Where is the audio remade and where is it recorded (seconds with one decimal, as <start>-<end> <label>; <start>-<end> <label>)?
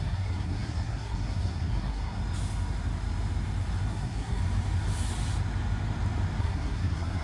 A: 0.0-2.2 remade; 2.2-3.9 recorded; 3.9-4.4 remade; 4.4-6.4 recorded; 6.4-7.2 remade